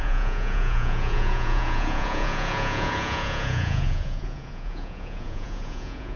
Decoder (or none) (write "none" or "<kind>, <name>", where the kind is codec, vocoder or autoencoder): vocoder, Vocos